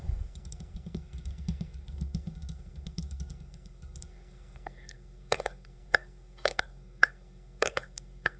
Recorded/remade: remade